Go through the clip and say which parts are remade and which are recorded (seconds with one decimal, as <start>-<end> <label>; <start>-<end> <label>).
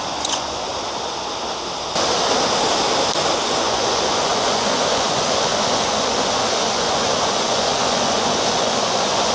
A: 0.0-0.7 remade; 0.7-3.4 recorded; 3.4-9.3 remade